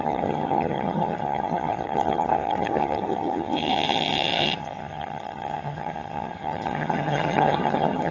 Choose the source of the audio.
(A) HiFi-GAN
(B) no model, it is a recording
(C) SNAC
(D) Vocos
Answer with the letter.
A